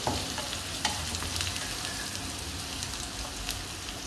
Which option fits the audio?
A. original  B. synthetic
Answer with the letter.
A